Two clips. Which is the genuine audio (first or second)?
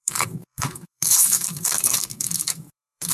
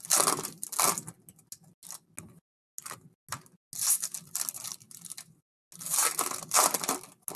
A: second